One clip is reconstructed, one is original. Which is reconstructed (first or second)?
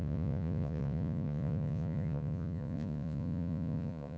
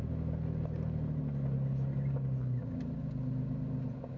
first